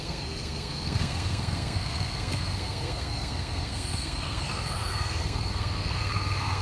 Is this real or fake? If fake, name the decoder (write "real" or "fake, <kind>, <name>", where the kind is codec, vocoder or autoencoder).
fake, codec, SNAC